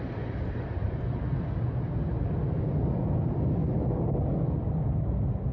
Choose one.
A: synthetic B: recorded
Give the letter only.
B